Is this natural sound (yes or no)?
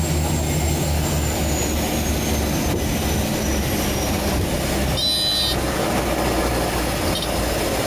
yes